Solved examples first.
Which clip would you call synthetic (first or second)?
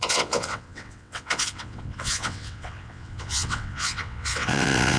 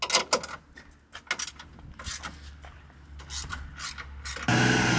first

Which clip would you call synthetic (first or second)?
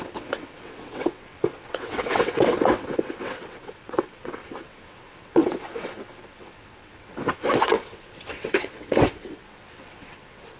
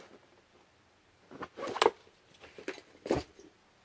first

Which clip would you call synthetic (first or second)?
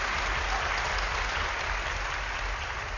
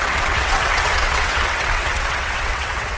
second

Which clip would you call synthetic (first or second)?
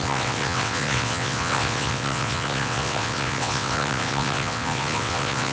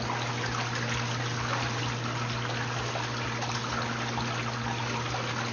first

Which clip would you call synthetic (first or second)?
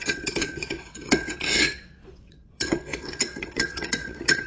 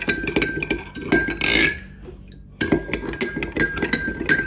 first